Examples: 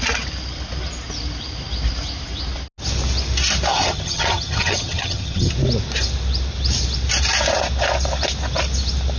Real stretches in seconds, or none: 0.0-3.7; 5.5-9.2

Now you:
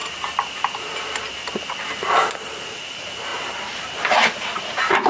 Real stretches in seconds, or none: 0.0-2.7

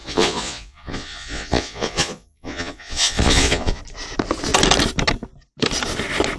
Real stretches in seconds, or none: 3.8-6.4

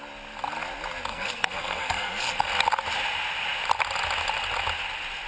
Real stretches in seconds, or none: 0.0-1.1; 2.5-5.3

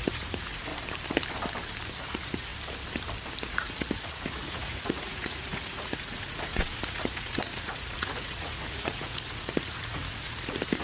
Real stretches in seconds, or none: 0.7-2.0; 2.5-3.5